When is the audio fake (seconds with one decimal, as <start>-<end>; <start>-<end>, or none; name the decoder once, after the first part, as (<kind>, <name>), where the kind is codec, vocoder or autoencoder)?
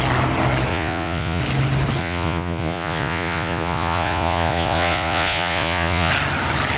0.7-1.4 (vocoder, Vocos); 2.0-6.1